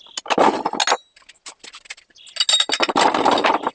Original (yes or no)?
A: yes